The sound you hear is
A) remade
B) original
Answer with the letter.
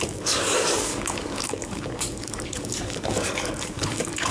A